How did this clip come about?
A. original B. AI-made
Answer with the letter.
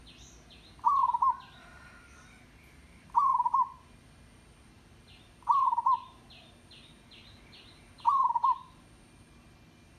A